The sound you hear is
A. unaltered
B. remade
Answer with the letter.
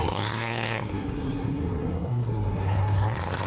B